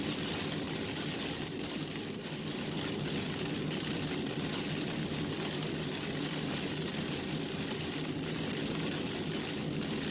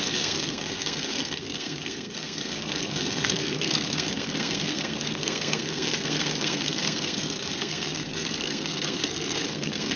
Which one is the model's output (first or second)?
second